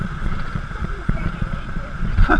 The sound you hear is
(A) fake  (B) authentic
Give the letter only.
A